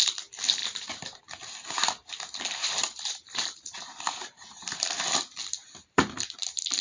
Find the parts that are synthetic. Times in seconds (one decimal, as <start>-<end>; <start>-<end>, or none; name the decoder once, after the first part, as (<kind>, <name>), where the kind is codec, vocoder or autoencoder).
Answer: 0.6-1.2 (vocoder, BigVGAN v2); 2.6-4.8